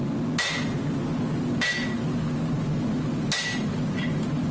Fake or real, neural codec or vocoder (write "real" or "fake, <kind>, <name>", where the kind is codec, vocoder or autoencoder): real